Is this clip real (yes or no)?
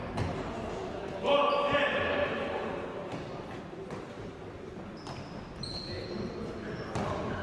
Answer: yes